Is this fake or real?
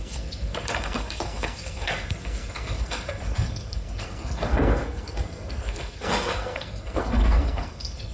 fake